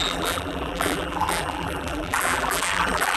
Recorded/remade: remade